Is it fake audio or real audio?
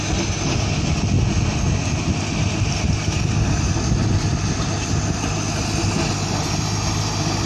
real